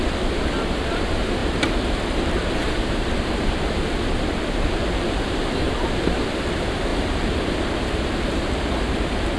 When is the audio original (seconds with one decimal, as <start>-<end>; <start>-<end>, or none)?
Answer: none